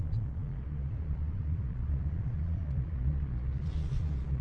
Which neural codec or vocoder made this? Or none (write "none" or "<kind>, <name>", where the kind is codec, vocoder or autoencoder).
vocoder, Vocos